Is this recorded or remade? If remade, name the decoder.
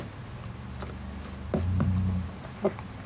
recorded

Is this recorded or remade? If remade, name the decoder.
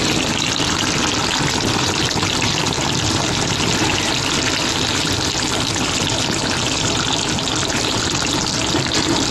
recorded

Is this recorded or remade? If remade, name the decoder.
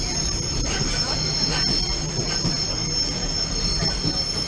remade, vocoder, BigVGAN v2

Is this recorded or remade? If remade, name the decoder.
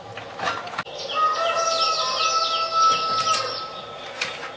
recorded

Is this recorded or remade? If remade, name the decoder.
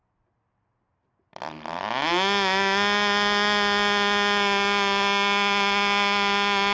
recorded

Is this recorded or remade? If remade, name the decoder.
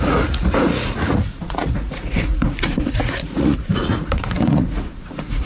remade, vocoder, Vocos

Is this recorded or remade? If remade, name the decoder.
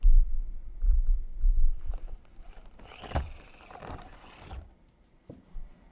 remade, vocoder, BigVGAN v2